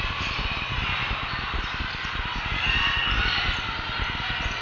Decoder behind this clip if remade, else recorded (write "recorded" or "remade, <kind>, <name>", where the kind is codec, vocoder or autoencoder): recorded